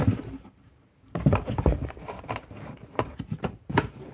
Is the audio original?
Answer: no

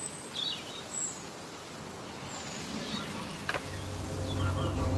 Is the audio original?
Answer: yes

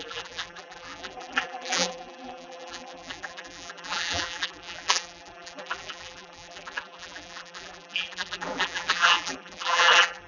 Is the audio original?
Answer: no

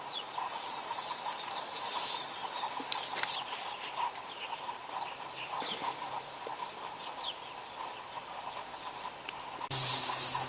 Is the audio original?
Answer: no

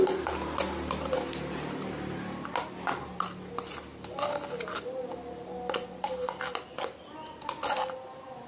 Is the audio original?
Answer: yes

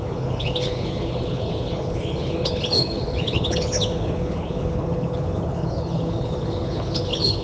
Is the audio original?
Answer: no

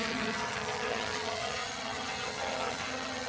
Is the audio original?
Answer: no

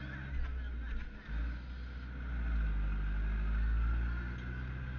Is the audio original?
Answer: yes